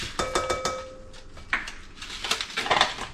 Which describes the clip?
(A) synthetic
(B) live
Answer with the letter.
B